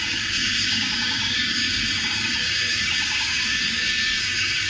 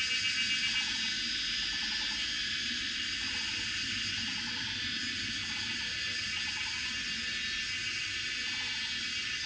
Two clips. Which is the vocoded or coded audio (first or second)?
first